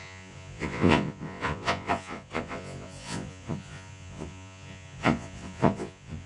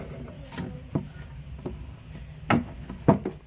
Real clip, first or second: second